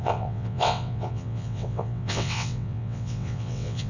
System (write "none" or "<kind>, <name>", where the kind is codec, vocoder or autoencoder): vocoder, WaveNeXt